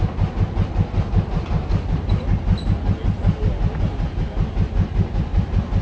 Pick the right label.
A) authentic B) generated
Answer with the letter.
A